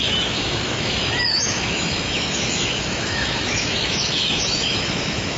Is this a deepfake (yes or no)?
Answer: yes